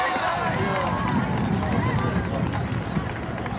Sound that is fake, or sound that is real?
real